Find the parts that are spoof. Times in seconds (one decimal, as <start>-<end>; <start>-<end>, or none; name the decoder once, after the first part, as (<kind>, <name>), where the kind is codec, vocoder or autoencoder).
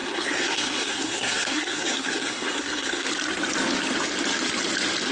0.0-3.1 (codec, SNAC)